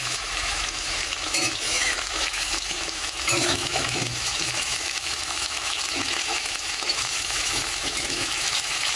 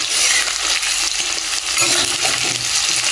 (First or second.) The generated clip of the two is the first